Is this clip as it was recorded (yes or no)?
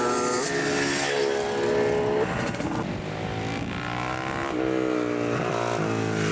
yes